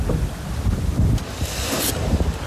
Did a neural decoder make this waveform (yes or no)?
no